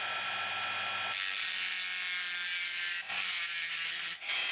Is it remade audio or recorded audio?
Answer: recorded